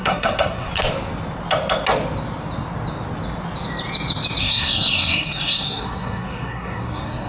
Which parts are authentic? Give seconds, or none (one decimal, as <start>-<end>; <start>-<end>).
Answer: 0.7-4.4